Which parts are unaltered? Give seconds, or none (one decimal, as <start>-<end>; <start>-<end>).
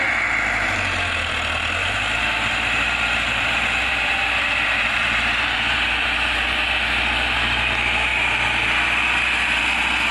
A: 0.0-1.8; 6.6-10.1